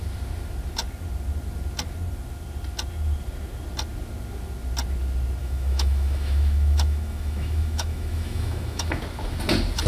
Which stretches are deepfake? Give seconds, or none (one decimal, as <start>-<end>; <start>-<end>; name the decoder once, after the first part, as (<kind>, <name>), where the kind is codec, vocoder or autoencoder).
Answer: 5.4-9.0 (autoencoder, DAC-VAE)